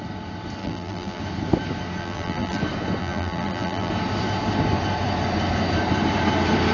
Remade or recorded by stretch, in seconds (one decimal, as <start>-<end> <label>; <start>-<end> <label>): 0.0-0.6 recorded; 0.6-1.2 remade; 1.2-2.0 recorded; 2.0-2.6 remade; 2.6-3.0 recorded; 3.0-3.9 remade; 3.9-6.7 recorded